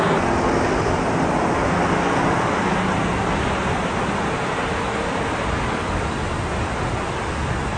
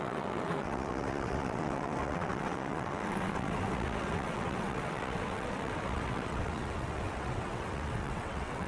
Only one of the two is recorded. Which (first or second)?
first